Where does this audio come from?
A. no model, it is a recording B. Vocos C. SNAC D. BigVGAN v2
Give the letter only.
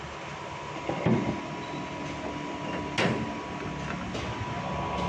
A